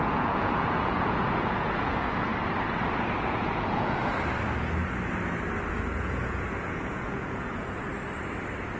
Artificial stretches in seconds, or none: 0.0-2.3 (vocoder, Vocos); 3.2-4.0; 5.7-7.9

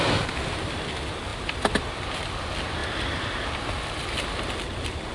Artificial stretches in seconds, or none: none

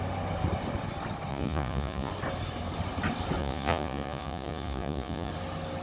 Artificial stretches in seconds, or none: 1.3-2.1 (vocoder, Vocos); 3.4-5.3

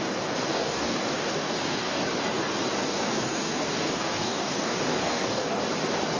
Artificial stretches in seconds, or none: 0.5-2.0 (codec, DAC); 2.8-5.6

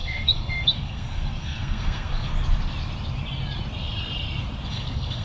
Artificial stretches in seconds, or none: 0.0-2.3 (codec, SNAC); 4.7-5.2